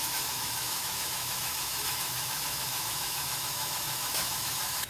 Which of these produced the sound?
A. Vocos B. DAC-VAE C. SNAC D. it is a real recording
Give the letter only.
B